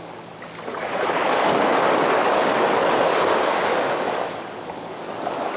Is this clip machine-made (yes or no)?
yes